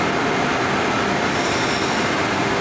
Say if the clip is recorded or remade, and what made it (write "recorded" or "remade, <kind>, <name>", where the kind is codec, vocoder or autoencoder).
recorded